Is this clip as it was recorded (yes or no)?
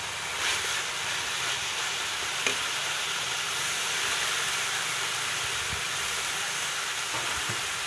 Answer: yes